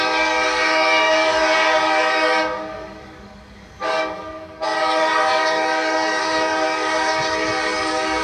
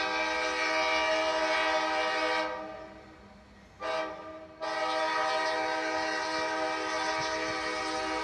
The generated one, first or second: first